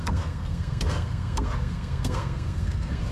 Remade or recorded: remade